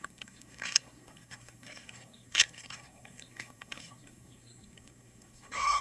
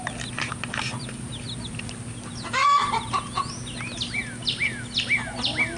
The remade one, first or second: first